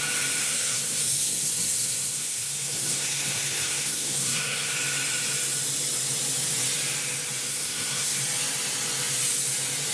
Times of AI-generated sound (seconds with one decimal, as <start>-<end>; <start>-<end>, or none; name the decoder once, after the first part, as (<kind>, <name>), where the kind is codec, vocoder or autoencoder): 0.4-4.7 (codec, SNAC); 7.5-8.2